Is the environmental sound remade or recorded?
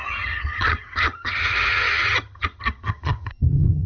remade